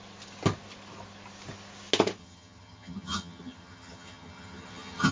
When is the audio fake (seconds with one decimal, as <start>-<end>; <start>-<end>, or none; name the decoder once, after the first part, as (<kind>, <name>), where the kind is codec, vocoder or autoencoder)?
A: 2.2-5.1 (vocoder, HiFi-GAN)